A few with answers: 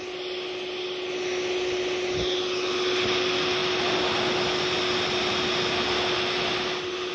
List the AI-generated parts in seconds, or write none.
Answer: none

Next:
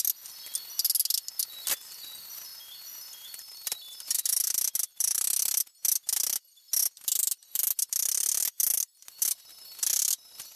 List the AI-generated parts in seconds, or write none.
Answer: none

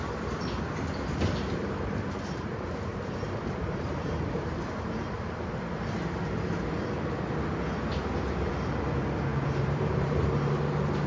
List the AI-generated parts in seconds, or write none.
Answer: 2.9-7.0; 7.9-8.5; 9.3-10.6

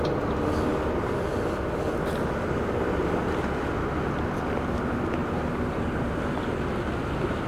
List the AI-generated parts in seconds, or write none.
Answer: 5.2-6.2